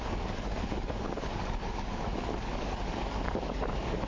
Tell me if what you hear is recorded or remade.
remade